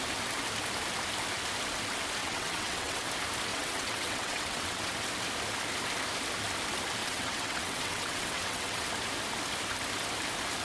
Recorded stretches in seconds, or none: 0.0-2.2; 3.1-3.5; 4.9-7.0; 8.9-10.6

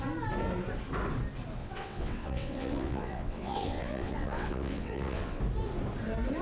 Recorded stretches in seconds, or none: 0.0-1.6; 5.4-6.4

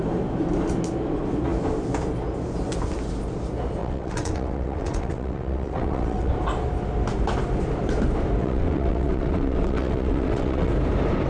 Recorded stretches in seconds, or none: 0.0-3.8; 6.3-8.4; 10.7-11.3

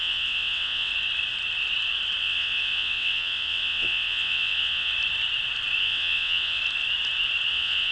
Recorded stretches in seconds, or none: 0.9-2.2; 4.9-5.8; 6.6-7.5

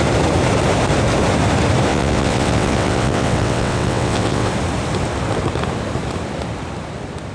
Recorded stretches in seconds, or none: 0.0-1.9; 4.5-7.3

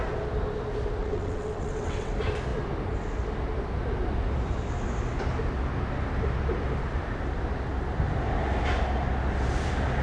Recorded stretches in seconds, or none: 0.0-1.0; 2.1-10.0

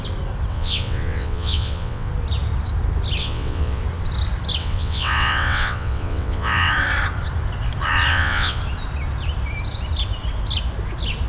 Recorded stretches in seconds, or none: 0.0-0.5; 2.1-3.2; 3.8-4.6; 6.7-8.1; 8.6-11.3